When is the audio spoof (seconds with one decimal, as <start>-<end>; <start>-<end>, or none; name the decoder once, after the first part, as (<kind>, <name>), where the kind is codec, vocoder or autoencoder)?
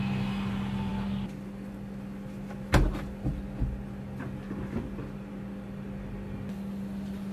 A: none